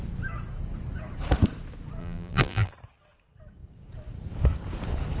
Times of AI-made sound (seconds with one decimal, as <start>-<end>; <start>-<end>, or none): 2.0-2.7